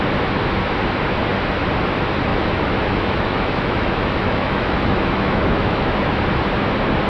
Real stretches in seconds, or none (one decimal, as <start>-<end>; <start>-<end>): 0.0-2.3; 6.2-7.1